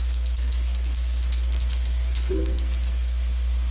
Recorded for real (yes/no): no